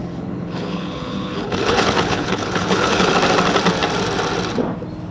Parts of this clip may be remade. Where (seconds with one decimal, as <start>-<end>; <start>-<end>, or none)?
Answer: 0.0-3.1

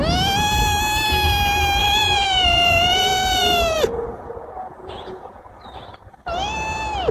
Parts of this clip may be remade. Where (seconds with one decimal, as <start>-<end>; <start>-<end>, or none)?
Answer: 1.8-5.5

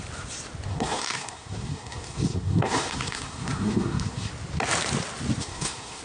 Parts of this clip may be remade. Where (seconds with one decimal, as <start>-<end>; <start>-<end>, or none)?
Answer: 0.7-4.3; 5.4-6.0

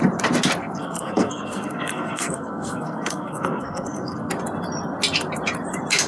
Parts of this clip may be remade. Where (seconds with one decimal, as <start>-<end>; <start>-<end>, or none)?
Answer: 0.6-4.3

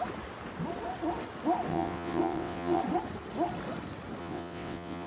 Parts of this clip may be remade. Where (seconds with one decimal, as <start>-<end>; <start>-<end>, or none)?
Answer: 1.7-2.8; 4.2-5.1

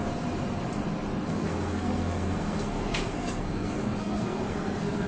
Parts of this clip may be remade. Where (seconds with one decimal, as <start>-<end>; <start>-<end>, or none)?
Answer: 1.3-5.1

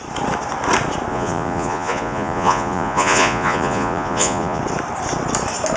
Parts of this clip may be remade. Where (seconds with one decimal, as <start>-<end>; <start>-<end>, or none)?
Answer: 1.1-4.6